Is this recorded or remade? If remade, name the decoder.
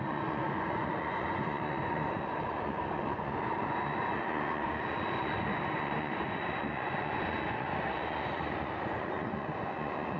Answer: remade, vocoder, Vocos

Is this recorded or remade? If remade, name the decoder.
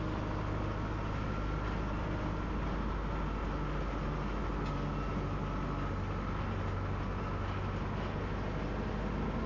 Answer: recorded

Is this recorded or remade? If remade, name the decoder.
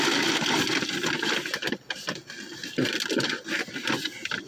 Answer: recorded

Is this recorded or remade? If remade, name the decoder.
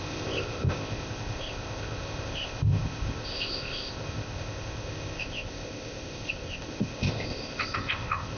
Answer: remade, codec, ZipCodec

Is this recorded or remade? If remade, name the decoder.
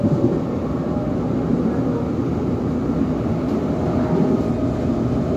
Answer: recorded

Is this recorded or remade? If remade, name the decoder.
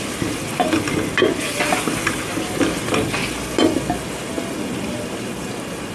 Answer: recorded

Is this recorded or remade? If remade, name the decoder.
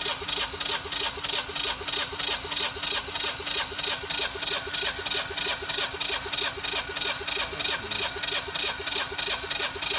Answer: recorded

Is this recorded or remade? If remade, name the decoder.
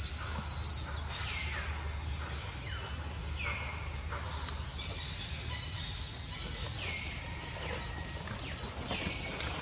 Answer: recorded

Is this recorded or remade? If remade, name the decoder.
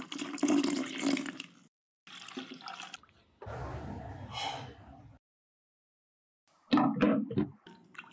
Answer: recorded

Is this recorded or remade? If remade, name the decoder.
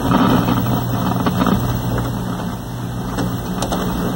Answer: recorded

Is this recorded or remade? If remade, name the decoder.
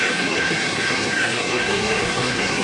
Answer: remade, codec, SNAC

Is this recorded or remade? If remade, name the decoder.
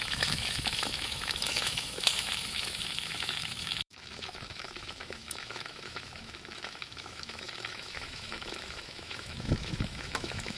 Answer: remade, autoencoder, DAC-VAE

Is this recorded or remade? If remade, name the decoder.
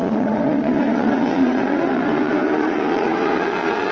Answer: remade, vocoder, Vocos